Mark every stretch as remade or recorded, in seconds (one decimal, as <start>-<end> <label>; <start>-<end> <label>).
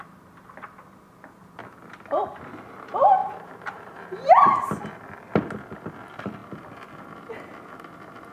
0.0-1.6 recorded; 1.6-2.4 remade; 2.4-3.2 recorded; 3.2-4.7 remade; 4.7-8.3 recorded